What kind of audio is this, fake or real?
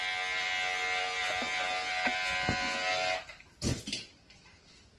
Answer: real